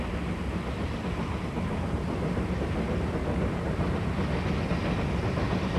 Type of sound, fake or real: real